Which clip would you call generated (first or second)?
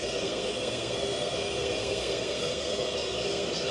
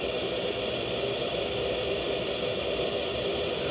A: first